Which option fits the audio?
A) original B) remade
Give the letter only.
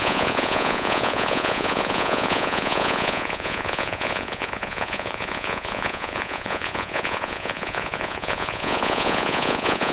B